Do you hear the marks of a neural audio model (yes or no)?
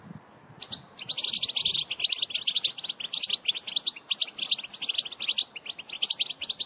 no